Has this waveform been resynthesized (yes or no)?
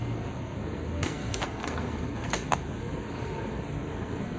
yes